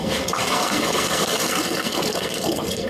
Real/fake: fake